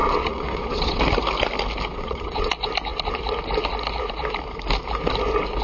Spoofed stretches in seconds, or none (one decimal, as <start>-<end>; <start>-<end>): 0.0-1.0; 1.9-2.5